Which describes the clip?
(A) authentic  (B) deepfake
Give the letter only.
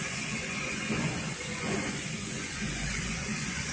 B